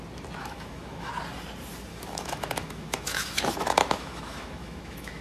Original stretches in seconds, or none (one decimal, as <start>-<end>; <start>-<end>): 0.0-0.4; 1.1-1.9